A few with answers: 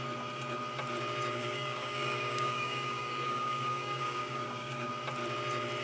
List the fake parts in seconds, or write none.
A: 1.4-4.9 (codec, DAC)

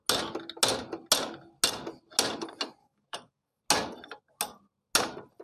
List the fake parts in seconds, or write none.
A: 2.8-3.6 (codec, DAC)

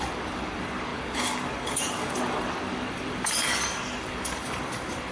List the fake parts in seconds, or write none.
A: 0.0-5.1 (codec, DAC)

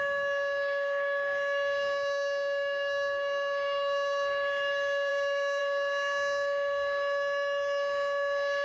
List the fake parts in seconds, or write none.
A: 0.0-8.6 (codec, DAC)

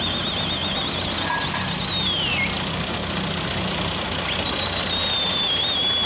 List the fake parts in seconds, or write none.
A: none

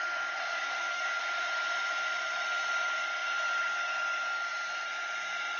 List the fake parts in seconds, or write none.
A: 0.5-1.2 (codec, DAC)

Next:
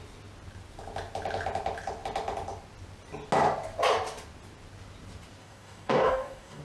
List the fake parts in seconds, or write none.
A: 5.4-6.6 (codec, DAC)